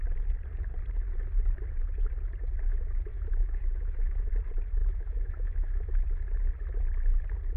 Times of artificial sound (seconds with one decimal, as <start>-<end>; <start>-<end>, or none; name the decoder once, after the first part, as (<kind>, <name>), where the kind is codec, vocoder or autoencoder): 3.1-4.3 (autoencoder, DAC-VAE); 4.8-6.1